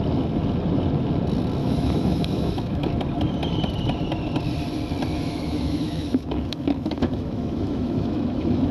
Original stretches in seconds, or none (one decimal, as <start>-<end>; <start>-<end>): 0.0-1.6; 2.9-5.1